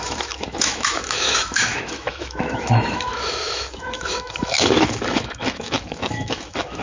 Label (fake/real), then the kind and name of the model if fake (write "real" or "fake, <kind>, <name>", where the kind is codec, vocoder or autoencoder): fake, autoencoder, DAC-VAE